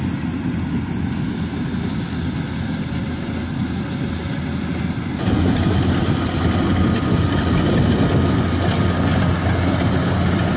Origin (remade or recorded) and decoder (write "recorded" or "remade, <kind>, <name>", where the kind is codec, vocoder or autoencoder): recorded